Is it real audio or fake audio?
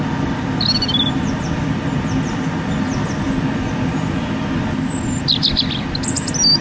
real